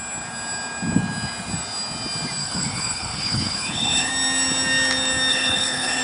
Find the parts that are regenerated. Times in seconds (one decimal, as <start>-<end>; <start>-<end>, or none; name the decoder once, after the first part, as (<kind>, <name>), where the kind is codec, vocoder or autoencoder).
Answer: 2.4-4.1 (codec, HILCodec); 5.3-6.0